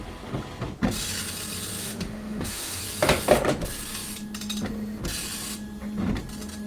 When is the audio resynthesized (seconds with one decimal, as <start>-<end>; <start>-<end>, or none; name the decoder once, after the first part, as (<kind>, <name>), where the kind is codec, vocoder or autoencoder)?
1.8-2.8 (autoencoder, DAC-VAE)